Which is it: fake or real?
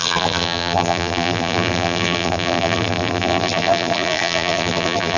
fake